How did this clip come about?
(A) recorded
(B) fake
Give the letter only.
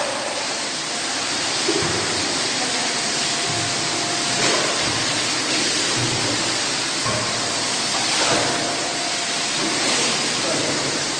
A